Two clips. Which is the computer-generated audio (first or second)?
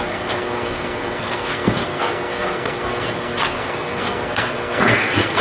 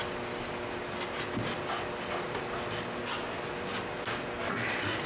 first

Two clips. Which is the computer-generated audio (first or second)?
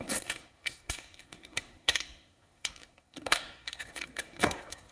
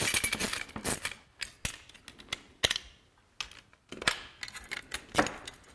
first